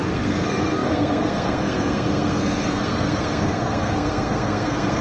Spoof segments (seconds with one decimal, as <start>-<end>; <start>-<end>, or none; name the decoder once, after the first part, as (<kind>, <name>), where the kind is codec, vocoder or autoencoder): 0.0-5.0 (codec, SNAC)